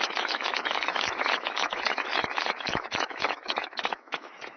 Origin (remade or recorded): remade